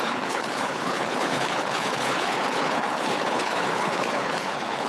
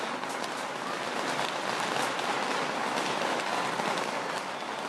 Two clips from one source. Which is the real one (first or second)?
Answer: second